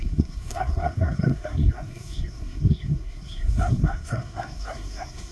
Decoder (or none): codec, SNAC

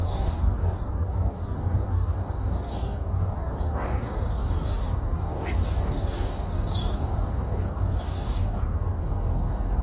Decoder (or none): codec, DAC